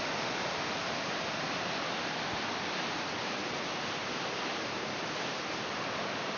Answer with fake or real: real